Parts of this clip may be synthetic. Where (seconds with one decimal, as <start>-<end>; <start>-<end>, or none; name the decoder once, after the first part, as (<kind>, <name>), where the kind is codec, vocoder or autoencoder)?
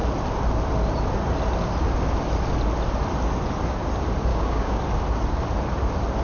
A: 4.3-4.8 (codec, DAC)